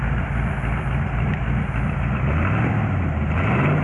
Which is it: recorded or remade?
recorded